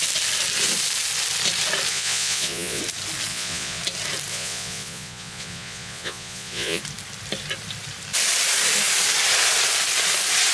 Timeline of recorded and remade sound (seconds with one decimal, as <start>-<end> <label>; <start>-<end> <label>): 0.0-1.9 recorded; 1.9-2.8 remade; 2.8-3.3 recorded; 3.3-3.8 remade; 3.8-4.3 recorded; 4.3-6.8 remade; 6.8-10.5 recorded